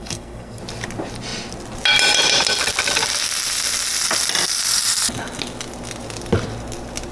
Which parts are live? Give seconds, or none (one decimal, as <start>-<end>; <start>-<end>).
0.6-7.1